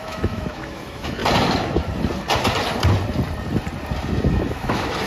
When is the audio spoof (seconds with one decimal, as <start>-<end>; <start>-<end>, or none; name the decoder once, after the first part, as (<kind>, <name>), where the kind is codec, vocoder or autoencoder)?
0.0-1.2 (autoencoder, DAC-VAE); 4.3-5.1